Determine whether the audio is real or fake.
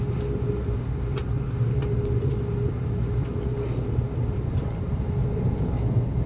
real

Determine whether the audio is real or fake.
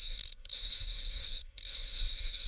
fake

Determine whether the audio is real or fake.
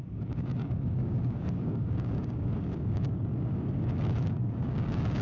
fake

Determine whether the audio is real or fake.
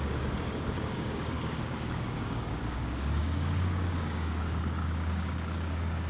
fake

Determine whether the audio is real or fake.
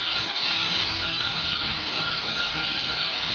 fake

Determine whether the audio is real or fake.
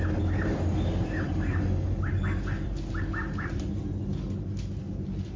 real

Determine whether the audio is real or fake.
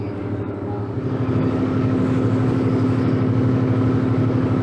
fake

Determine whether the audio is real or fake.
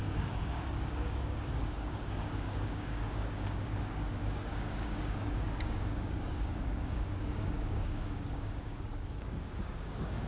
fake